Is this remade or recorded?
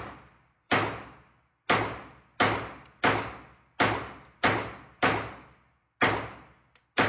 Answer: recorded